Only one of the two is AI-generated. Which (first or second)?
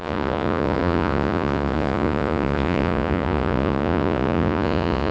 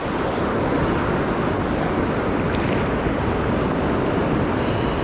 first